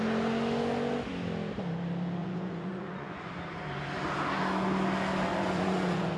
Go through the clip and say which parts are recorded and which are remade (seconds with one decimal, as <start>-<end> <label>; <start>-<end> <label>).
0.0-2.2 recorded; 2.2-3.3 remade; 3.3-5.3 recorded; 5.3-6.2 remade